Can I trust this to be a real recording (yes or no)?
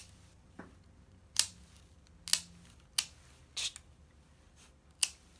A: yes